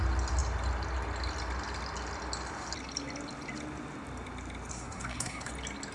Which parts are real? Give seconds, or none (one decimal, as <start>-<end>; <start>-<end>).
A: 0.0-4.7; 5.5-5.9